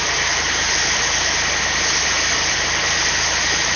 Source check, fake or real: real